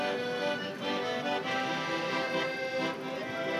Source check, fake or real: real